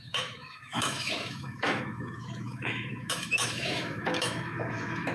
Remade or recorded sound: remade